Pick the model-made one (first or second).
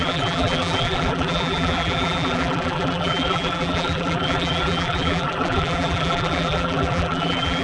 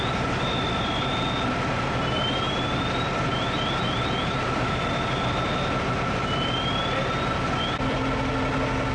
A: first